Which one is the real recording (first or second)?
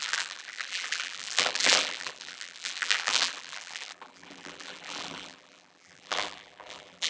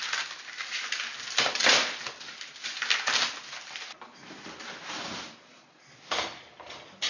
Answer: second